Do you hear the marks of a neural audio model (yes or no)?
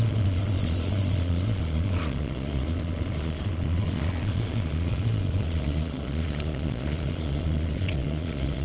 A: yes